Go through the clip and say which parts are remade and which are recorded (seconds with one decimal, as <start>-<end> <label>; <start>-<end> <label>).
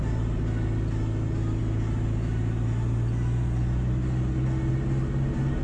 0.0-5.6 recorded